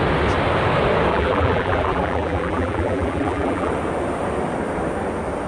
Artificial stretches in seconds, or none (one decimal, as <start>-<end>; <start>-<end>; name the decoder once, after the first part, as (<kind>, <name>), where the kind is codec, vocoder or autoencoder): 1.1-3.7 (vocoder, BigVGAN v2)